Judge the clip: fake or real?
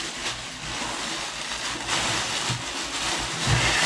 real